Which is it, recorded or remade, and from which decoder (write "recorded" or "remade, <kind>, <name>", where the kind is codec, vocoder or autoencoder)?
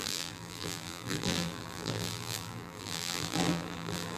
remade, vocoder, BigVGAN v2